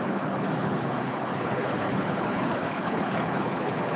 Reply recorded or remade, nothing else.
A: remade